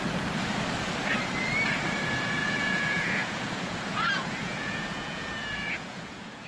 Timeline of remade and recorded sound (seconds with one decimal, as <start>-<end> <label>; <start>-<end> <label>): 0.0-2.4 recorded; 2.4-6.5 remade